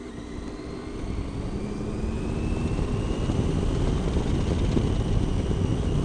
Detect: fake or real real